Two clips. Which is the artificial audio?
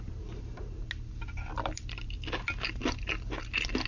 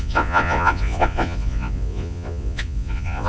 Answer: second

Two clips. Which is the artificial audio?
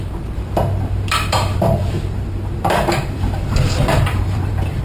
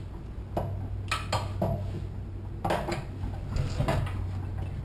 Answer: first